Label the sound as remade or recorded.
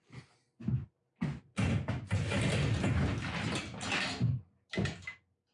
recorded